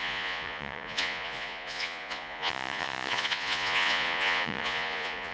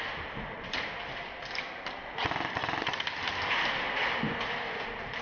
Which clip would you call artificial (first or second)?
first